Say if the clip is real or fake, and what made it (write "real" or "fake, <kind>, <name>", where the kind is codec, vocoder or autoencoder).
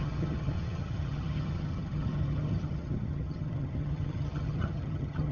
fake, vocoder, HiFi-GAN